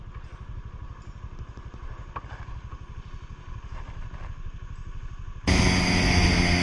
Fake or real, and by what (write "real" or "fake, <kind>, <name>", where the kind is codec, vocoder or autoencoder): real